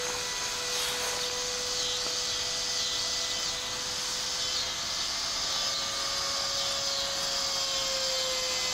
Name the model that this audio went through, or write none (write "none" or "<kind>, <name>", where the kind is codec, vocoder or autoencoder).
none